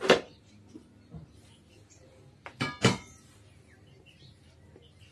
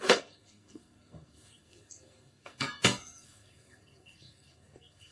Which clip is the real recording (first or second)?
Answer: first